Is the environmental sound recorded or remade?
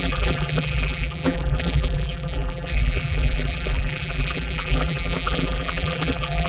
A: remade